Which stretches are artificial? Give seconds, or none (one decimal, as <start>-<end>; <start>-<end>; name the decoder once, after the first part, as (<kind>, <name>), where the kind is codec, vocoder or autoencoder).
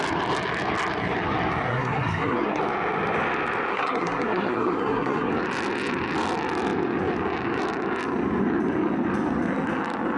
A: 1.7-2.6 (codec, SNAC); 3.7-5.3